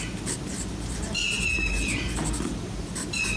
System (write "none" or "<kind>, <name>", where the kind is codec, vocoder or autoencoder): none